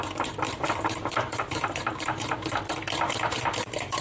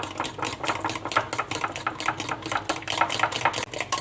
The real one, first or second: second